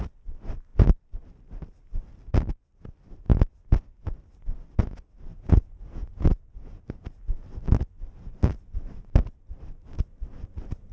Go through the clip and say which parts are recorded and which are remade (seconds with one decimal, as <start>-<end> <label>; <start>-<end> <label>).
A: 0.0-5.3 recorded; 5.3-6.8 remade; 6.8-10.9 recorded